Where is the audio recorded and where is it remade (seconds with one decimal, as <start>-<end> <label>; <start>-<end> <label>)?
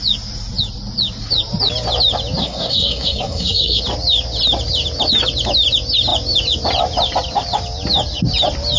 0.0-2.4 recorded; 2.4-3.8 remade; 3.8-8.8 recorded